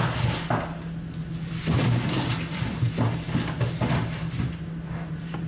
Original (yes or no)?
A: yes